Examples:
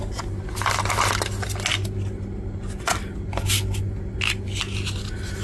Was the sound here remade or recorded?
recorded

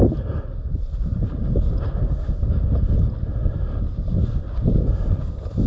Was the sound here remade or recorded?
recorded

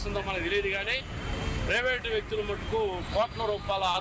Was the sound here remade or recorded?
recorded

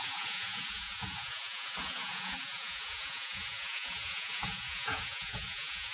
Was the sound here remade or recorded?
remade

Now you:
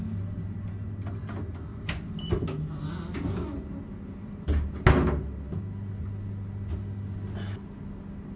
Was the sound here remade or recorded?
recorded